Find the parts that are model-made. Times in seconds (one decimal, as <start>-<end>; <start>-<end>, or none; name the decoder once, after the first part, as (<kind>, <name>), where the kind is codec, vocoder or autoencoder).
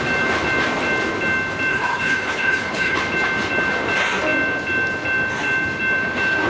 1.7-3.0 (codec, HILCodec)